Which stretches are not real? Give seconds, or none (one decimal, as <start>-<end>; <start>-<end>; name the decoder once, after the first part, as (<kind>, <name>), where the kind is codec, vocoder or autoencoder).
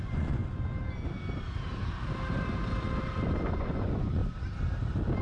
0.0-0.4 (vocoder, Vocos); 3.5-4.2